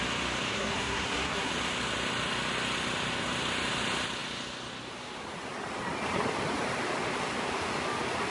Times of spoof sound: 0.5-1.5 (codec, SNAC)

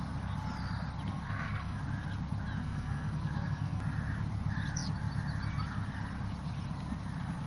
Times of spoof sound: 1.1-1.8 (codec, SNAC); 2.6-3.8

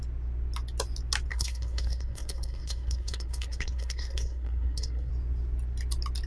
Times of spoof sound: 1.3-5.1 (codec, SNAC)